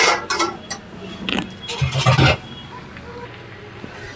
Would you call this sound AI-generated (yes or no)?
no